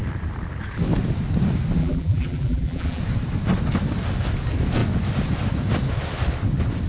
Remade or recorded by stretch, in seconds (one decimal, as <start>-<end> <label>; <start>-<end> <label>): 0.0-1.8 recorded; 1.8-3.0 remade; 3.0-6.9 recorded